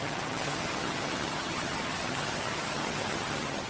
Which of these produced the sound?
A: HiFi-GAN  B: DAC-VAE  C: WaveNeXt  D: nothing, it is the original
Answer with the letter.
A